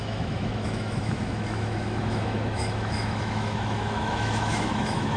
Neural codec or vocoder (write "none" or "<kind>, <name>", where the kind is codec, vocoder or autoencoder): autoencoder, DAC-VAE